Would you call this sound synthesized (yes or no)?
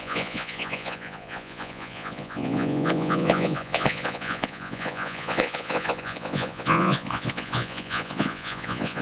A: yes